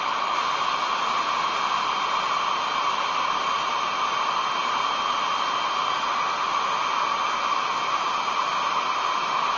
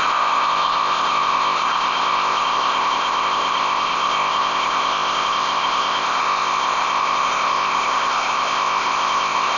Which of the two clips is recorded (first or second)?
first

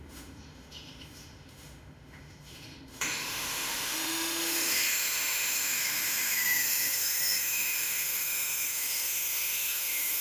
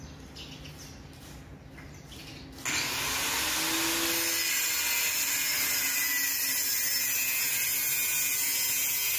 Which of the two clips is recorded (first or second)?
second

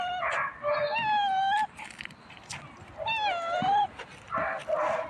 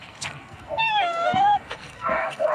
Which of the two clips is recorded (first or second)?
first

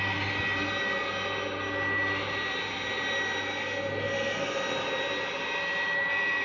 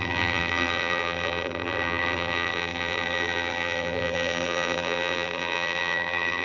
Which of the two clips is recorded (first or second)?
first